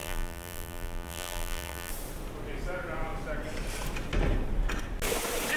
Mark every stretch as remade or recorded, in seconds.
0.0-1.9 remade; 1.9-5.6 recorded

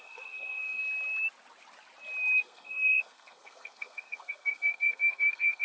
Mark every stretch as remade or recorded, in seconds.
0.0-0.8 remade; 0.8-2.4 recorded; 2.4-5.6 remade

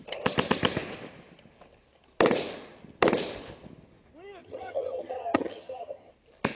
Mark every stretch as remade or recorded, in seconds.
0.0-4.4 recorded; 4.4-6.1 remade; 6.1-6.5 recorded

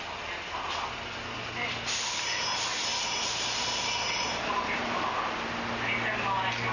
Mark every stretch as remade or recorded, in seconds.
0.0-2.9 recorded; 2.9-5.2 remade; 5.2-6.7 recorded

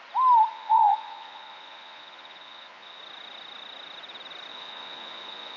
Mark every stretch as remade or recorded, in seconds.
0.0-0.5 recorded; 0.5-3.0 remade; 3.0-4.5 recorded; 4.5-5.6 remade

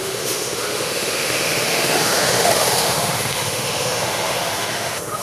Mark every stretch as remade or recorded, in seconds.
0.0-5.2 remade

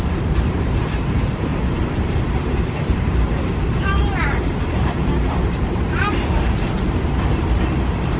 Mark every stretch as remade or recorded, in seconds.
0.0-1.5 remade; 1.5-2.1 recorded; 2.1-8.2 remade